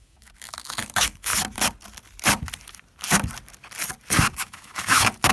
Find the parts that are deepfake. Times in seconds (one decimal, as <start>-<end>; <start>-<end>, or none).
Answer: 0.0-1.3; 4.3-5.3